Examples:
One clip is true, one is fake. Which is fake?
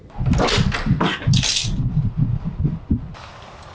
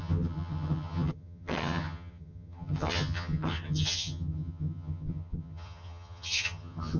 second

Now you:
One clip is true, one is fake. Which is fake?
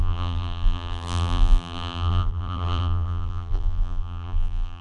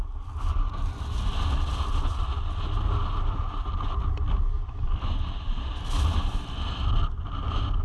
first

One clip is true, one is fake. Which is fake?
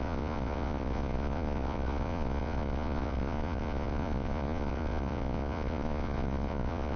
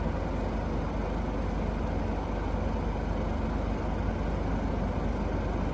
first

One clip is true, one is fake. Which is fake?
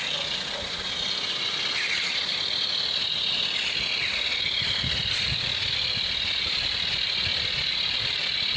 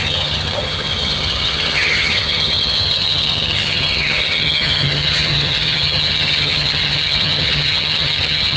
second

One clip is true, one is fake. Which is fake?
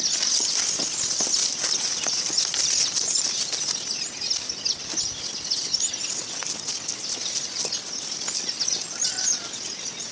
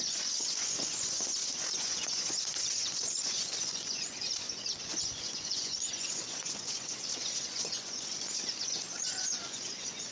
second